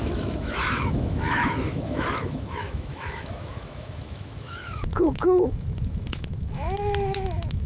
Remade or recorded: remade